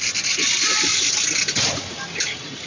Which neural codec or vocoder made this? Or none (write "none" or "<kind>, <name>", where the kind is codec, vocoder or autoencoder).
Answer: none